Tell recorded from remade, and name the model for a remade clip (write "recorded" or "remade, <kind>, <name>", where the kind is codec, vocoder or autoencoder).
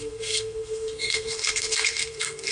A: remade, codec, SNAC